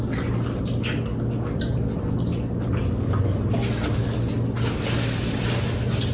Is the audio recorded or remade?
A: recorded